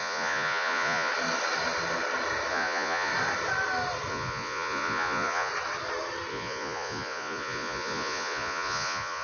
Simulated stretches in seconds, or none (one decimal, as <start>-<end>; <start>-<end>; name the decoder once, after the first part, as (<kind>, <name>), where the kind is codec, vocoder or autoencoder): 0.0-1.1 (vocoder, Vocos); 2.5-3.1; 4.1-5.5; 6.3-9.2